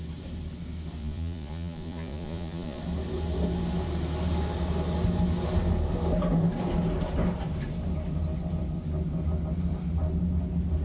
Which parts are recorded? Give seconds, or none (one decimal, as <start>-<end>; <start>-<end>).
0.0-1.0; 2.8-10.8